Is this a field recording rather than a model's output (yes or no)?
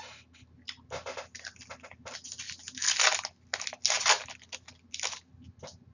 yes